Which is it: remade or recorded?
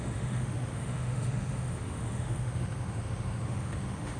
remade